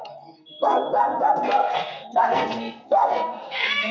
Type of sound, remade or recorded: remade